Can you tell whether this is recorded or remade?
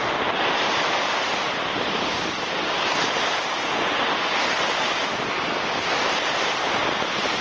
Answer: recorded